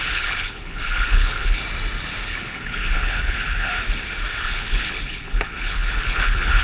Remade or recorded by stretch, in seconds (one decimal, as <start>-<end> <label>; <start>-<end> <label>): 0.0-1.6 remade; 1.6-2.2 recorded; 2.2-3.7 remade; 3.7-4.4 recorded; 4.4-6.6 remade